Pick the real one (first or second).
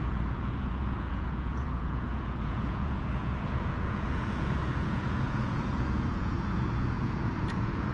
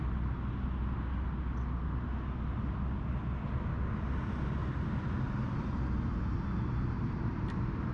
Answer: second